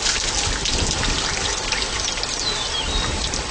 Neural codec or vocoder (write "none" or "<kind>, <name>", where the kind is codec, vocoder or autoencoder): none